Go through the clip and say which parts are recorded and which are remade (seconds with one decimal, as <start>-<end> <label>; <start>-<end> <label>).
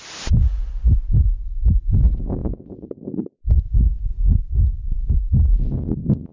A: 0.0-3.5 recorded; 3.5-5.1 remade; 5.1-6.3 recorded